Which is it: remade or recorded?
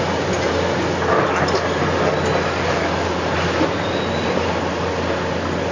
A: recorded